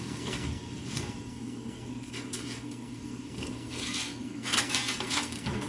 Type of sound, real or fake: fake